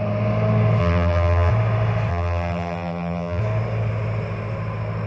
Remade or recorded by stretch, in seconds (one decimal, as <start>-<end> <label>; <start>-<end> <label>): 0.0-0.8 recorded; 0.8-1.5 remade; 1.5-2.1 recorded; 2.1-3.4 remade; 3.4-5.1 recorded